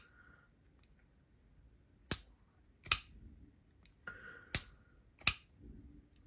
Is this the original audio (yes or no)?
yes